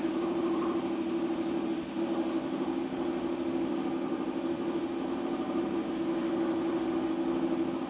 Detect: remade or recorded recorded